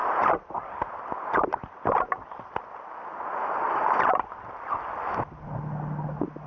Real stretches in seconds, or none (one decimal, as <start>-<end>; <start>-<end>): 0.0-6.5